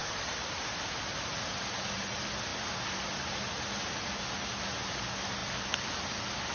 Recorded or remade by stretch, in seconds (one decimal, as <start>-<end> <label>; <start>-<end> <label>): 0.0-6.5 recorded